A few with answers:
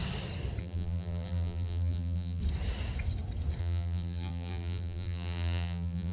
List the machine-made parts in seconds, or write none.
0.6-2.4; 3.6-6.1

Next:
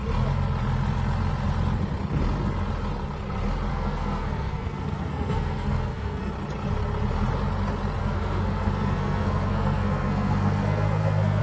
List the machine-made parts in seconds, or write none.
3.7-6.3; 8.0-11.4

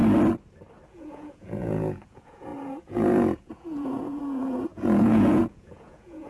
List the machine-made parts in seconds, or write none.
0.9-6.3